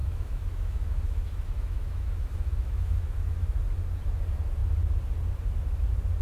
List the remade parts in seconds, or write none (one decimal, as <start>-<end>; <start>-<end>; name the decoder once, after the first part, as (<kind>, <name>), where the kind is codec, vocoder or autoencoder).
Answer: 0.0-3.6 (autoencoder, DAC-VAE)